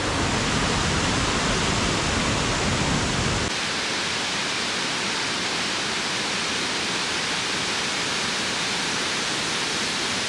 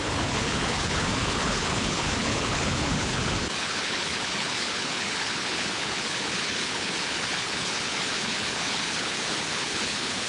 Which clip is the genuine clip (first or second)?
first